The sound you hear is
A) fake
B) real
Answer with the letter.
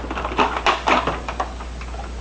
B